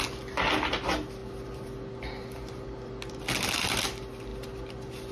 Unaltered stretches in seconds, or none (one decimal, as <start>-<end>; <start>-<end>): 0.0-5.1